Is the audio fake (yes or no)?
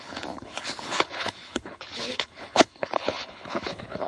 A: yes